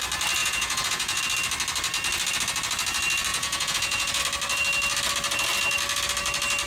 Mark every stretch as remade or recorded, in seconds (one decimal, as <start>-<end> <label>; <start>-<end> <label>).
0.0-0.4 recorded; 0.4-1.2 remade; 1.2-3.3 recorded; 3.3-4.2 remade; 4.2-6.7 recorded